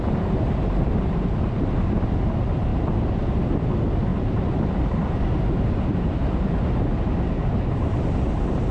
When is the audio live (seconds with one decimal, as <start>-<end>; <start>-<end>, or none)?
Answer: 0.0-0.6; 1.4-8.7